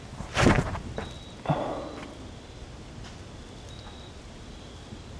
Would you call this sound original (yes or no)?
yes